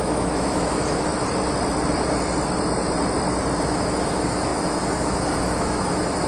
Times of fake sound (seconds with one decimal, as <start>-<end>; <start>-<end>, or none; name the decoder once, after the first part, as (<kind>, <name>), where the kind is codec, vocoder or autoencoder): 0.0-1.1 (autoencoder, DAC-VAE); 3.6-6.3